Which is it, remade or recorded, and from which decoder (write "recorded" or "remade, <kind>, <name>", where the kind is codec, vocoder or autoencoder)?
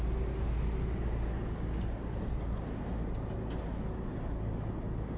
recorded